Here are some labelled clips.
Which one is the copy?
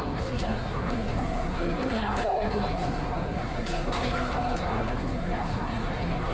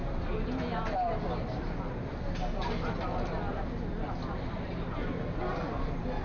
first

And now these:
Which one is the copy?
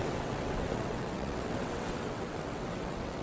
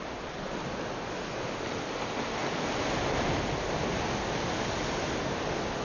first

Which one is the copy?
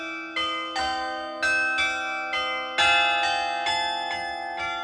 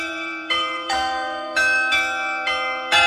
second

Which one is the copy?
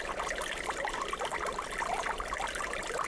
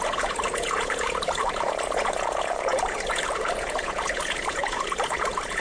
second